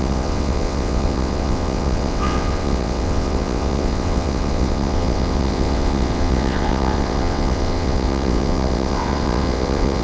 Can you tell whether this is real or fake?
fake